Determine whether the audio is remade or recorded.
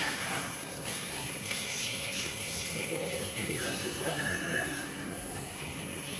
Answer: remade